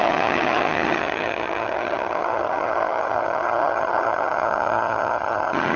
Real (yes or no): no